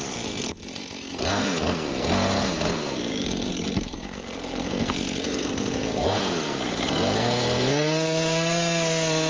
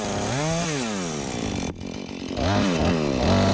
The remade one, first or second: first